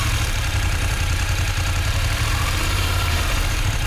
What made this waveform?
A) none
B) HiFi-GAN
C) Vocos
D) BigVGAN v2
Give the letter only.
D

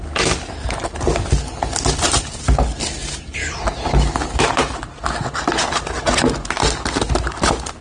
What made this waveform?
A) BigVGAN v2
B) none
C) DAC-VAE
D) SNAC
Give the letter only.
B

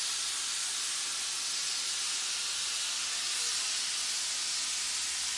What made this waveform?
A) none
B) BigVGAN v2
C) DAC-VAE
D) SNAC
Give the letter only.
A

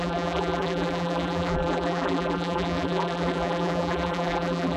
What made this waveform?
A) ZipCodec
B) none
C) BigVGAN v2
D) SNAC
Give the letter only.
C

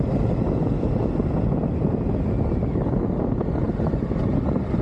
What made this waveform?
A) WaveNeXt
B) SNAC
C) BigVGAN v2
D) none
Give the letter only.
D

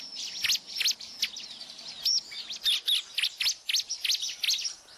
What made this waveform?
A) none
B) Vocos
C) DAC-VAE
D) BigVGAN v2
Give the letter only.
A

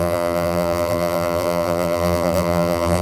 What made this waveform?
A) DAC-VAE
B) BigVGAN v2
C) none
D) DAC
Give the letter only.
B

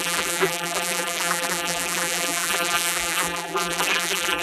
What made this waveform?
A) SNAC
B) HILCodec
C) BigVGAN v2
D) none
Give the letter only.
C